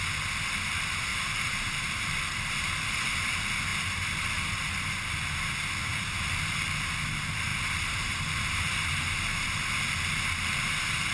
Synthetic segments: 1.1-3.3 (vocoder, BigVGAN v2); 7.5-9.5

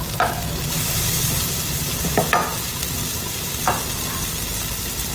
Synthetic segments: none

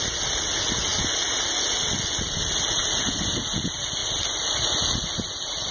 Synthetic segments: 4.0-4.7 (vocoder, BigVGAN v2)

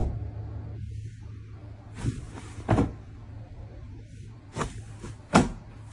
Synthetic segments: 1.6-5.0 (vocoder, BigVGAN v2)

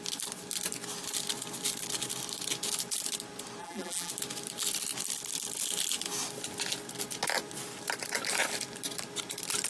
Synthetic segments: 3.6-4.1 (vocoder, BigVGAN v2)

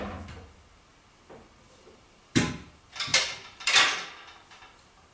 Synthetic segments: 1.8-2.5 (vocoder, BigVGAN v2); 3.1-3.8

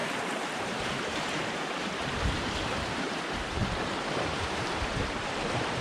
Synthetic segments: 0.0-5.8 (vocoder, BigVGAN v2)